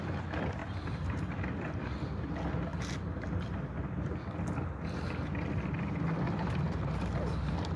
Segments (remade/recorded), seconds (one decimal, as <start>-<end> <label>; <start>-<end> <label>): 0.0-2.7 recorded; 2.7-4.3 remade; 4.3-7.8 recorded